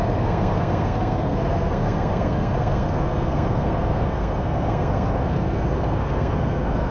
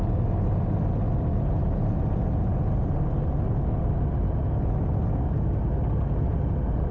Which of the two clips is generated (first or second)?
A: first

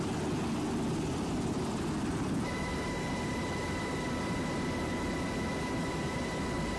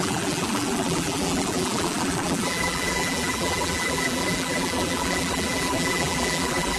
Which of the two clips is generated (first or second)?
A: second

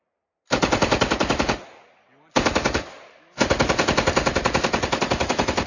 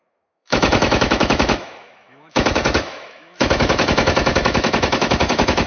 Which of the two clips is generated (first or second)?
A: second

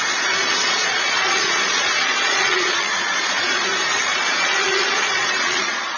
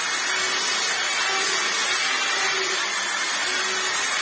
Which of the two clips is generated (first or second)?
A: first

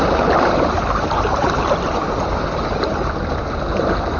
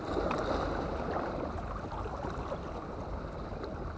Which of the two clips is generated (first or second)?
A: second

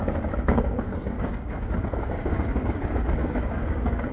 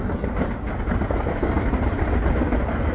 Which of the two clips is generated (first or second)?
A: first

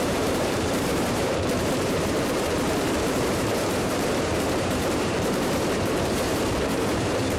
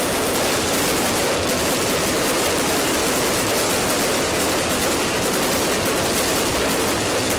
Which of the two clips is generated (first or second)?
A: first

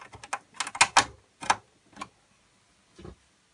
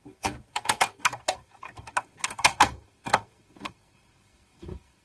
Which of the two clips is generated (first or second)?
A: second